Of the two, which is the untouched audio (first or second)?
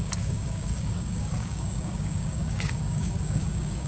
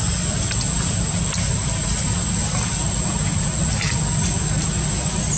second